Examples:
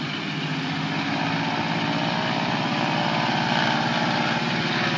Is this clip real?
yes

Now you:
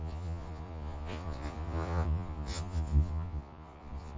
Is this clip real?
no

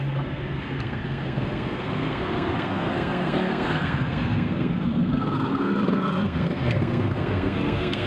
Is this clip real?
no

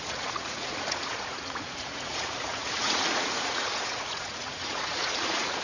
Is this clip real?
no